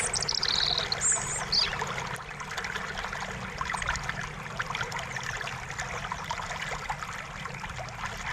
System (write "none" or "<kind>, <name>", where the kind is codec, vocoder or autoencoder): none